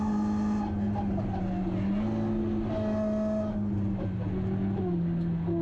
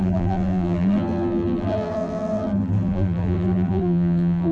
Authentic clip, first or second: first